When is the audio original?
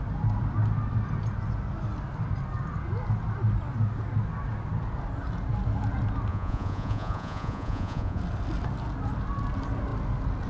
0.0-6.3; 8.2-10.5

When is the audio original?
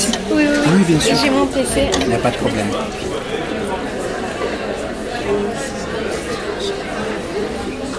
0.0-8.0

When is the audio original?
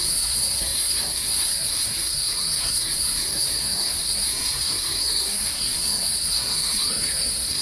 none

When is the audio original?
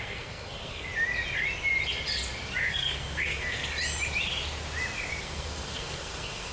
0.9-2.7; 3.6-5.2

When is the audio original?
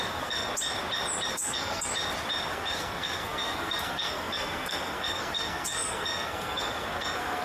0.5-1.3; 1.9-2.5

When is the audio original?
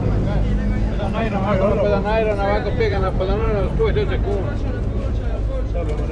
0.0-1.0; 1.8-2.9; 3.9-6.1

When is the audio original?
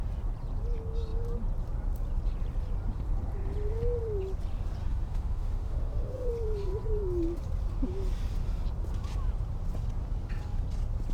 0.0-4.8; 6.3-11.1